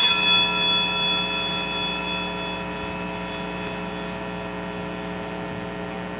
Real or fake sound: real